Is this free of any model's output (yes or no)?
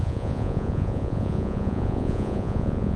no